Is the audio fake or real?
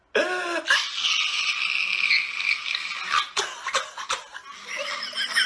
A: real